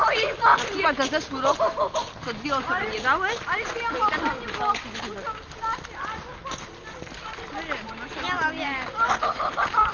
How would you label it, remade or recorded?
recorded